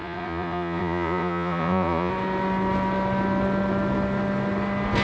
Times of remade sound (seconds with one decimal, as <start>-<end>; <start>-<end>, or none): 0.0-2.1